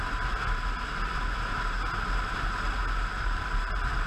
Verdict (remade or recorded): recorded